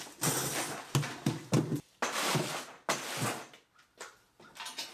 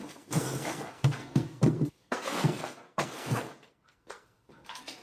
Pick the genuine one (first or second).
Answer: first